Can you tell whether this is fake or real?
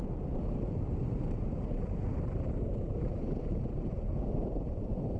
fake